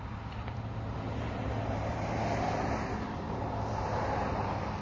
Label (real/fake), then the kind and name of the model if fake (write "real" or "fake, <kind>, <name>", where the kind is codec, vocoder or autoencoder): fake, vocoder, BigVGAN v2